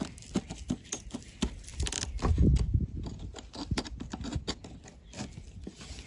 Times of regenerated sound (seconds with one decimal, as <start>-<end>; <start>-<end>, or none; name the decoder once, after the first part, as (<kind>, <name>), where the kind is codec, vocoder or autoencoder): none